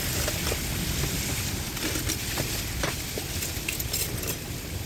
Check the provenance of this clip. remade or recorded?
recorded